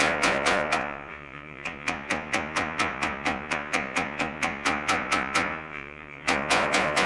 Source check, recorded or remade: remade